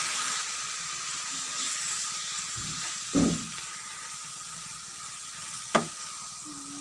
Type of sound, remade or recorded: recorded